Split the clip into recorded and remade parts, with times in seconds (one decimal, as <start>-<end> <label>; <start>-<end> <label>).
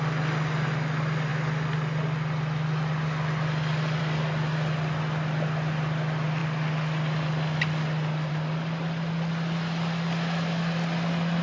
0.0-11.4 recorded